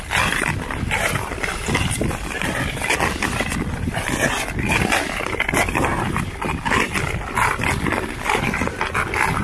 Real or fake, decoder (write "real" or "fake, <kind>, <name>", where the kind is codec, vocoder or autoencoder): real